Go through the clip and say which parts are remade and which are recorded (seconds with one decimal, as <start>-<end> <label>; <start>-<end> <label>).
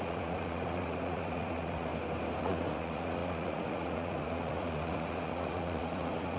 0.0-1.9 remade; 1.9-2.4 recorded; 2.4-6.4 remade